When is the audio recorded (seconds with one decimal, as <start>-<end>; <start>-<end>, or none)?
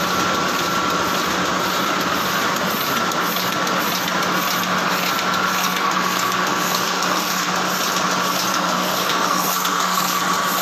0.0-5.6; 7.5-8.5; 10.2-10.6